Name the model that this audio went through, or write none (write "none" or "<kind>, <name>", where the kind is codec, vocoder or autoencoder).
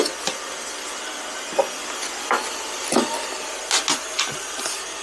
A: none